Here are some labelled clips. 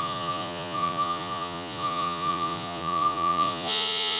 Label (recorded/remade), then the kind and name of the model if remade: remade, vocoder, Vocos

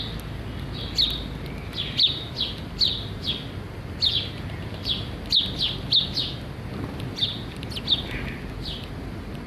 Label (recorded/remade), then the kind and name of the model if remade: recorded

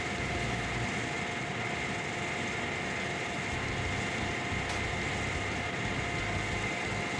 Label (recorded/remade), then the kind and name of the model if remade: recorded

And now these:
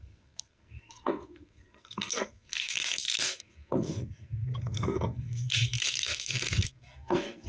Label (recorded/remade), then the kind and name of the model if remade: remade, codec, SNAC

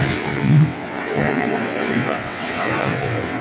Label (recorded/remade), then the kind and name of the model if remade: remade, vocoder, WaveNeXt